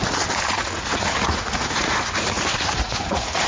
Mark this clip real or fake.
fake